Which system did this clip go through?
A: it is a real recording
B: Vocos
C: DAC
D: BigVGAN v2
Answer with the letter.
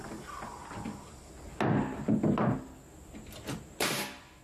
A